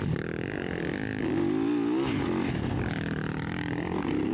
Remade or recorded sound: recorded